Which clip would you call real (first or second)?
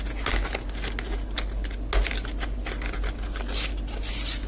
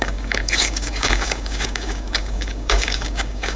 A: first